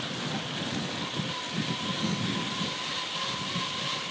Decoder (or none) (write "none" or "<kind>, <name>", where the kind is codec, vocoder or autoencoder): none